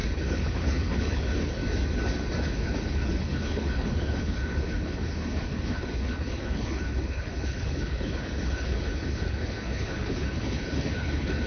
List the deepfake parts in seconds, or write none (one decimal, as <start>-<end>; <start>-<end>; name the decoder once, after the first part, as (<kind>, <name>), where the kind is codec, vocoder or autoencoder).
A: 0.0-1.6 (codec, HILCodec); 2.4-11.5